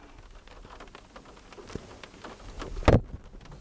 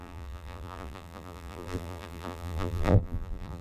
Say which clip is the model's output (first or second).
second